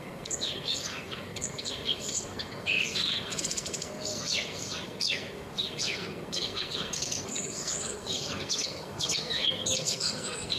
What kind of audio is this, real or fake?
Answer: fake